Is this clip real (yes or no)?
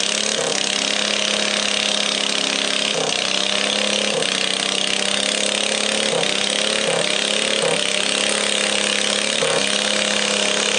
yes